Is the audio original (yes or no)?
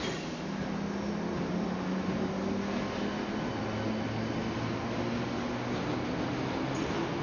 yes